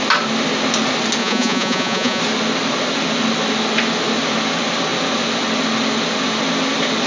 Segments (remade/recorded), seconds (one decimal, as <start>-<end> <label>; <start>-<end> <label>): 0.0-1.2 recorded; 1.2-2.2 remade; 2.2-7.1 recorded

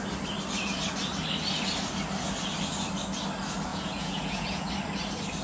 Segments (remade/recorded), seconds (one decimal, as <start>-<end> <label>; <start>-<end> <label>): 0.0-3.7 recorded; 3.7-4.7 remade; 4.7-5.4 recorded

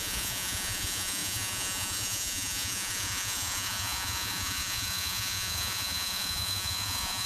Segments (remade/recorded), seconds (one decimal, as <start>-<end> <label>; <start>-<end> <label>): 0.0-7.3 remade

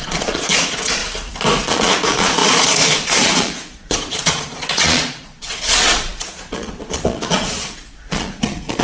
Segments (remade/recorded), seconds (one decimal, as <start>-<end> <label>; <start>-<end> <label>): 0.0-1.0 remade; 1.0-1.6 recorded; 1.6-8.8 remade

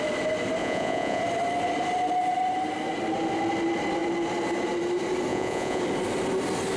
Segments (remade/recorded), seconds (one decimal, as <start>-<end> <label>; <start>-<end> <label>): 0.0-0.6 recorded; 0.6-1.2 remade; 1.2-5.3 recorded; 5.3-5.8 remade; 5.8-6.8 recorded

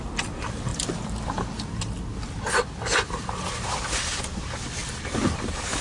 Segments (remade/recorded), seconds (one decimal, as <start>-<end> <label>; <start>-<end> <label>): 0.0-5.8 recorded